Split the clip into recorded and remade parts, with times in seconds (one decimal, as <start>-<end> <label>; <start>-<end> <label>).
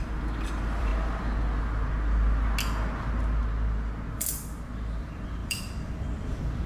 0.0-0.9 remade; 0.9-4.1 recorded; 4.1-6.7 remade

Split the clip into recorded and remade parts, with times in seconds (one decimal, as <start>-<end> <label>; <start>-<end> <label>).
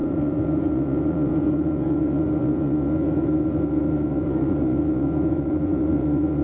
0.0-6.4 remade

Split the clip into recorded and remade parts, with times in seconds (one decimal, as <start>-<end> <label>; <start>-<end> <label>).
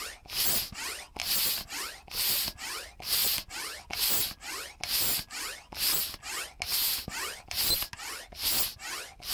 0.0-1.2 recorded; 1.2-3.5 remade; 3.5-6.7 recorded; 6.7-7.7 remade; 7.7-9.3 recorded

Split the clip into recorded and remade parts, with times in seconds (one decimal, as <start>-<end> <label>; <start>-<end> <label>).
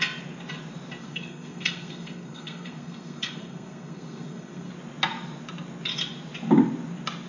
0.0-1.0 recorded; 1.0-4.7 remade; 4.7-7.3 recorded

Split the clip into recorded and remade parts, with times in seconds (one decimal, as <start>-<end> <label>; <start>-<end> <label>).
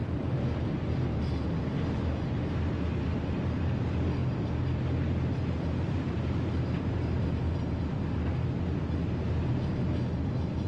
0.0-10.7 recorded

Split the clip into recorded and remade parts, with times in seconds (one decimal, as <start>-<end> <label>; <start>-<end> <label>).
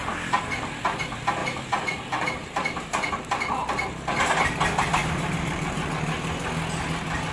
0.0-1.4 recorded; 1.4-4.2 remade; 4.2-5.0 recorded; 5.0-5.9 remade; 5.9-7.3 recorded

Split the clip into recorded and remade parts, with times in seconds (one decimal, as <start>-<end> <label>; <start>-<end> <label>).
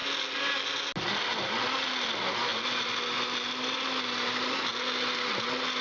0.0-5.8 recorded